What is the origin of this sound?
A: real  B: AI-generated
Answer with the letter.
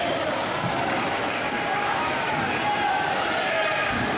B